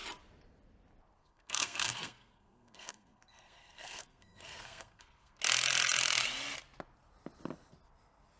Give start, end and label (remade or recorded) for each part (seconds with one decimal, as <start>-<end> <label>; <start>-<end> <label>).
0.0-1.2 recorded; 1.2-5.4 remade; 5.4-8.4 recorded